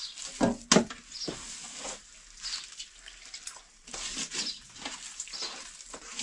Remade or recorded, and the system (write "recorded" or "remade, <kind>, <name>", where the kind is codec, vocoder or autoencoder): recorded